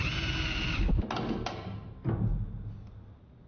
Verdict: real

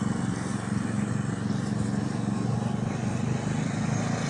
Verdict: real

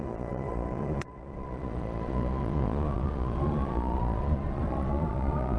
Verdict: fake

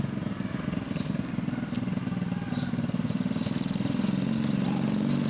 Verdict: real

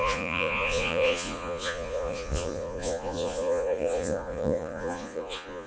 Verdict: fake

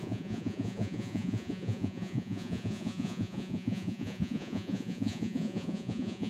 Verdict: fake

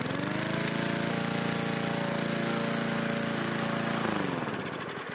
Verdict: real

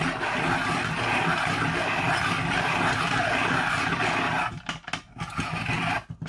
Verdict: real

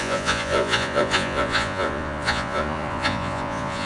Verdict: fake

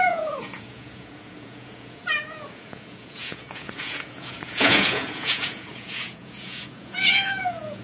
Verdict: fake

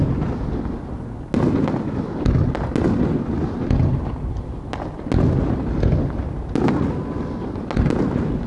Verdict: real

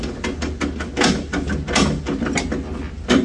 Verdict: real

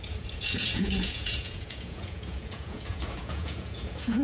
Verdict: fake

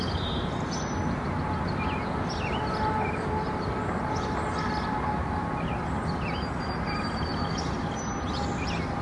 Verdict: real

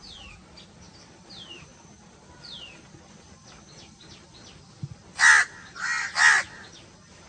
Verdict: real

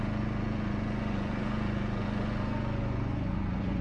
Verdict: fake